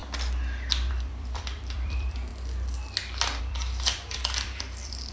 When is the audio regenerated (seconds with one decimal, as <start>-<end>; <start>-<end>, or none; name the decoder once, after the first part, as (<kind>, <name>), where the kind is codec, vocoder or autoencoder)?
0.9-2.3 (vocoder, BigVGAN v2); 3.4-5.1